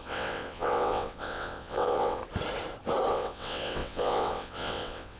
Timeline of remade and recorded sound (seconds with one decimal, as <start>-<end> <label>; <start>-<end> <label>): 0.0-2.2 remade; 2.2-3.1 recorded; 3.1-5.2 remade